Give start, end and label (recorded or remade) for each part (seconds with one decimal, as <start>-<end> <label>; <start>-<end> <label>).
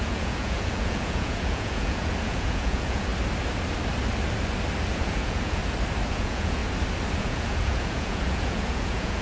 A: 0.0-3.1 remade; 3.1-5.0 recorded; 5.0-5.6 remade; 5.6-6.1 recorded; 6.1-6.6 remade; 6.6-7.2 recorded; 7.2-9.2 remade